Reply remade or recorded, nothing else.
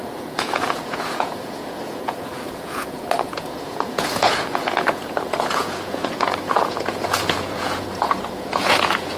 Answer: remade